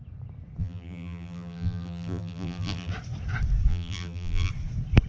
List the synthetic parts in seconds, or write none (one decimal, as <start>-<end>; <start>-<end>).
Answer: 0.6-2.9; 3.7-4.5